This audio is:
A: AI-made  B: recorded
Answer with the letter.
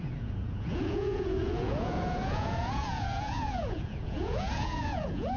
A